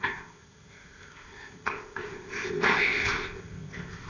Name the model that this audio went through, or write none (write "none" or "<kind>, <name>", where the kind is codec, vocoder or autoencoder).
codec, ZipCodec